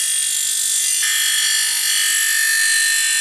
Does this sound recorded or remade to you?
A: recorded